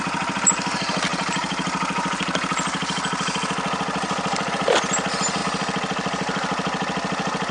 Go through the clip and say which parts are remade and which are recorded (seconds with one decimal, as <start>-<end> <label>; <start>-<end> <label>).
0.0-7.5 recorded